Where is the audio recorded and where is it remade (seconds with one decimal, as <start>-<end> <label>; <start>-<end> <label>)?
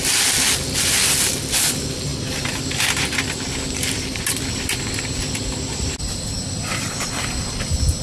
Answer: 0.0-8.0 recorded